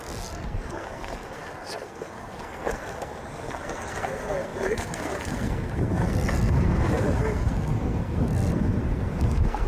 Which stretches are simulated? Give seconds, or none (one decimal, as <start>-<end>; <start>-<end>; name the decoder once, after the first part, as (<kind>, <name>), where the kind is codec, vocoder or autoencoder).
0.0-9.7 (codec, SNAC)

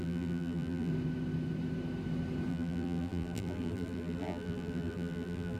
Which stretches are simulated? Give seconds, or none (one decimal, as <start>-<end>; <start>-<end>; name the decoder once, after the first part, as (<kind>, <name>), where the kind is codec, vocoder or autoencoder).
0.0-0.9 (vocoder, BigVGAN v2); 2.5-5.6